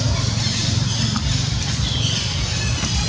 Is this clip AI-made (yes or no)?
no